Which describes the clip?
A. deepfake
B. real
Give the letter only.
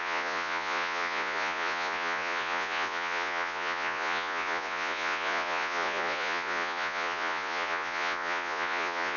A